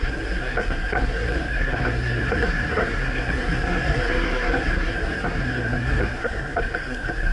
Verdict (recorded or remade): remade